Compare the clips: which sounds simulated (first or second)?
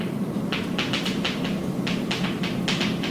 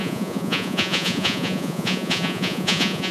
second